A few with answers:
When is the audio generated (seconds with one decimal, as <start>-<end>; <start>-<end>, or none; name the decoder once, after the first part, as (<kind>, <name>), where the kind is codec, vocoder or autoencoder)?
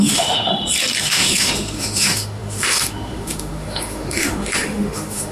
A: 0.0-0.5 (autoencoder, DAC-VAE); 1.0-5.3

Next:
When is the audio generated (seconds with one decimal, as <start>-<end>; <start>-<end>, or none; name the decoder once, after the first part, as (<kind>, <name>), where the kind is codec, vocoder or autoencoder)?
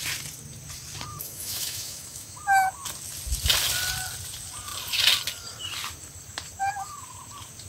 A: 1.1-2.4 (autoencoder, DAC-VAE)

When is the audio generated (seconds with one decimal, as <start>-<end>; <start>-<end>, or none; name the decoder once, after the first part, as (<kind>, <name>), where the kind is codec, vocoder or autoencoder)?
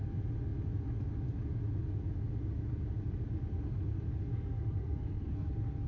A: 4.3-5.5 (codec, SNAC)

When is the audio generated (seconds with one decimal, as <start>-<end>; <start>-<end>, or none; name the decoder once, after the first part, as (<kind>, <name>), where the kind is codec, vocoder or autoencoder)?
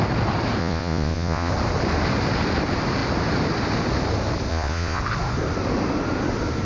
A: 0.6-1.5 (vocoder, Vocos); 4.5-5.0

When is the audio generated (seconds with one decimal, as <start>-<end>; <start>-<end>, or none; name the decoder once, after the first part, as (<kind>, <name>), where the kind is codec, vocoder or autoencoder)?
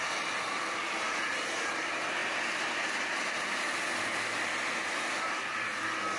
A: none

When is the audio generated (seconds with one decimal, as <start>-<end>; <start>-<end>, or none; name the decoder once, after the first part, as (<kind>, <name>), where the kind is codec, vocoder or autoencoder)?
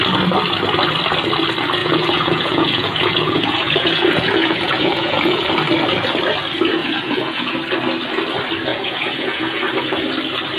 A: 1.8-5.5 (vocoder, Vocos); 6.8-7.5; 8.7-9.6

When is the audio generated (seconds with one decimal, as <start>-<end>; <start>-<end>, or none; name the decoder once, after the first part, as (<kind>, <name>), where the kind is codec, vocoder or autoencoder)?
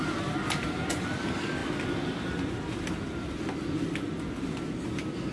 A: none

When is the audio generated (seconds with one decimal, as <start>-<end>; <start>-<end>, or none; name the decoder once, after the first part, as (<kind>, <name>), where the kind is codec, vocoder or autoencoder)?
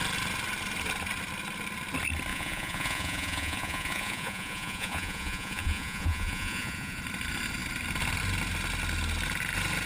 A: 2.3-7.0 (vocoder, Vocos)